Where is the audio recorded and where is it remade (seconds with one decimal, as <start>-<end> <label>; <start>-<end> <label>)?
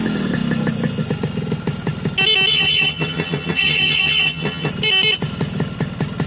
0.0-2.5 recorded; 2.5-4.7 remade; 4.7-6.3 recorded